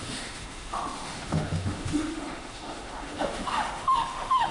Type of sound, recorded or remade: remade